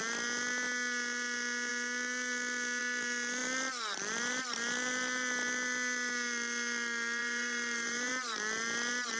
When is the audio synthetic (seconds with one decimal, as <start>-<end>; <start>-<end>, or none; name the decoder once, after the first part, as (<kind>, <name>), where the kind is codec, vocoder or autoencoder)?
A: 7.2-8.1 (vocoder, BigVGAN v2)